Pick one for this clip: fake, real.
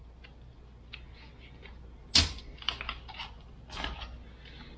real